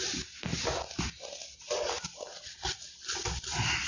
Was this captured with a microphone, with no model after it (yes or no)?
yes